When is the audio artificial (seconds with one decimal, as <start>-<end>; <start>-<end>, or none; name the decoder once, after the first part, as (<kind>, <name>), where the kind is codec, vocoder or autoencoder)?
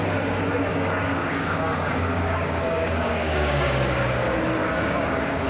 0.7-4.0 (codec, DAC); 4.6-5.5